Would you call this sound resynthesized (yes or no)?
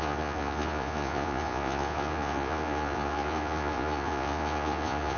yes